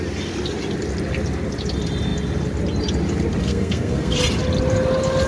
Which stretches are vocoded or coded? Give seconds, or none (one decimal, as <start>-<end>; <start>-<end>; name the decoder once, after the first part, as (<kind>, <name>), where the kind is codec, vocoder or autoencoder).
3.4-4.2 (codec, SNAC)